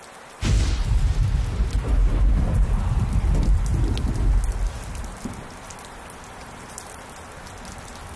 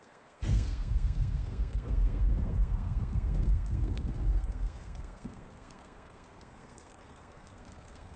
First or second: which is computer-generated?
second